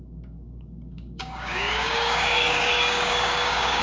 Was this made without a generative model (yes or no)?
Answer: no